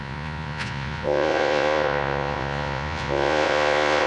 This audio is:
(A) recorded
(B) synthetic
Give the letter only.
B